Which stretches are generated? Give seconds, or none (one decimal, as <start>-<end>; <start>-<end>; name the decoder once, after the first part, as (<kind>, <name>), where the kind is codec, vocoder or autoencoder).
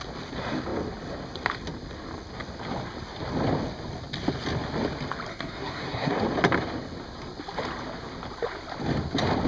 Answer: 5.3-6.2 (codec, SNAC)